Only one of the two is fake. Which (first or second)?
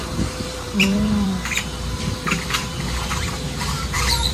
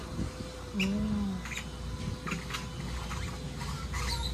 first